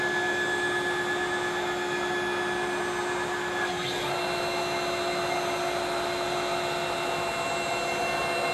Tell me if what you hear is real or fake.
real